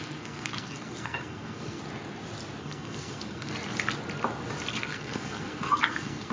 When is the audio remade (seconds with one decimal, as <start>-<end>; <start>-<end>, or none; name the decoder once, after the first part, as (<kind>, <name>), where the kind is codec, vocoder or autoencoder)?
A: 0.0-1.8 (codec, SNAC); 2.6-3.5; 4.7-6.3